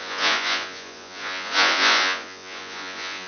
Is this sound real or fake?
fake